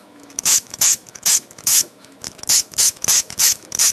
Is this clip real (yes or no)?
no